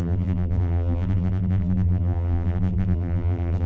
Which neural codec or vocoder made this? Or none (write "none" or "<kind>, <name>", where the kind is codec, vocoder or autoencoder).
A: vocoder, BigVGAN v2